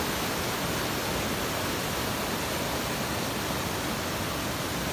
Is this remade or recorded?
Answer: recorded